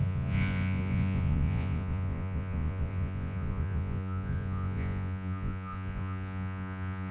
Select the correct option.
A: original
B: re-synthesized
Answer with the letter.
B